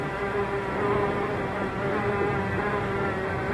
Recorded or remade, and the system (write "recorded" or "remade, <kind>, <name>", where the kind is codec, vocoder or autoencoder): recorded